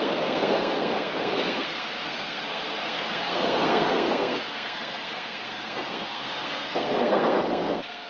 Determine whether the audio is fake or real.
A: fake